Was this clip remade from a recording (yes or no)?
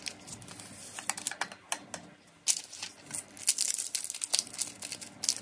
no